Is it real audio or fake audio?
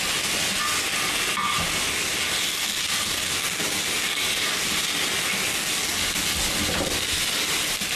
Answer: real